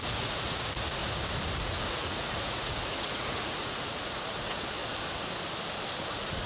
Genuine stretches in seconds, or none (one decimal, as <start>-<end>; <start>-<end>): 1.0-1.6; 4.8-6.1